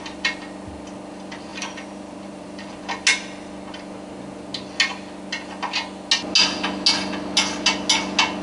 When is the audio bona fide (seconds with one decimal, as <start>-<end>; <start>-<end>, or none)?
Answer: 0.0-1.5; 2.8-8.4